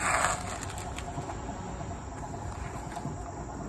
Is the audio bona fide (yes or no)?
yes